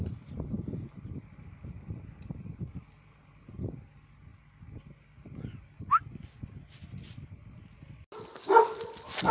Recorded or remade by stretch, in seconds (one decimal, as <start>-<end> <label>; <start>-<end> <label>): 0.0-9.3 recorded